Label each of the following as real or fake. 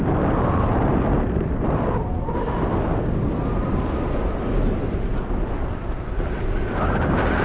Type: real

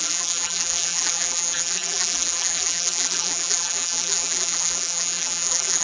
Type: fake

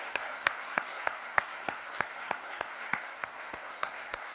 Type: fake